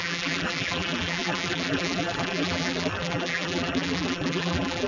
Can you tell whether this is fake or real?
fake